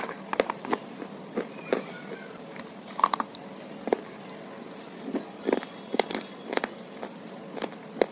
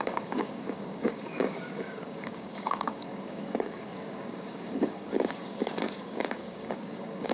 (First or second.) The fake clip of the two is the second